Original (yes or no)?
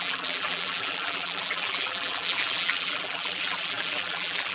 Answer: no